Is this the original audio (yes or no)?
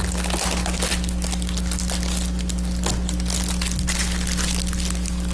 yes